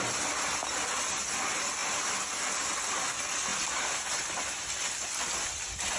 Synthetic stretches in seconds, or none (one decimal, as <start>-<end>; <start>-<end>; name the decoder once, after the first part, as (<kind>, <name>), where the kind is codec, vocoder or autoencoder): none